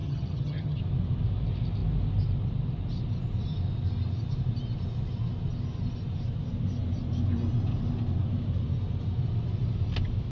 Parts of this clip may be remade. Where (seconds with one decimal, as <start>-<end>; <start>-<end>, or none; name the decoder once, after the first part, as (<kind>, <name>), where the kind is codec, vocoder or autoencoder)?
0.0-0.8 (vocoder, HiFi-GAN)